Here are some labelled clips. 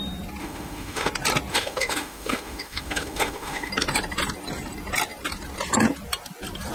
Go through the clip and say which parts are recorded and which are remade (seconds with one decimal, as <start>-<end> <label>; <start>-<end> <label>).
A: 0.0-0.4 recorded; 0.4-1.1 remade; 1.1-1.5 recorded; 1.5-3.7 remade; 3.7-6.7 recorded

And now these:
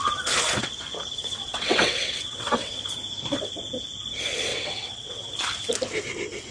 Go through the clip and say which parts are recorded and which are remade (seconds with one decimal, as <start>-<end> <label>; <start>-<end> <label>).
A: 0.0-1.4 recorded; 1.4-2.7 remade; 2.7-4.5 recorded; 4.5-5.3 remade; 5.3-6.5 recorded

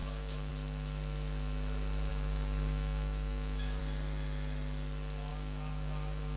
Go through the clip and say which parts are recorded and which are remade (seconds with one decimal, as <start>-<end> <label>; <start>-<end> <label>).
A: 0.0-0.5 remade; 0.5-2.1 recorded; 2.1-3.8 remade; 3.8-5.3 recorded; 5.3-6.4 remade